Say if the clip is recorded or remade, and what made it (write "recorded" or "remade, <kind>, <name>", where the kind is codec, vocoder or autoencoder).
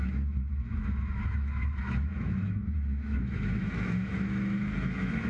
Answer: remade, autoencoder, DAC-VAE